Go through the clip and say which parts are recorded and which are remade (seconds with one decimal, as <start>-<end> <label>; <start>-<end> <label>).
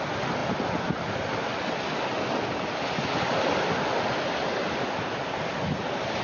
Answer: 0.0-6.2 recorded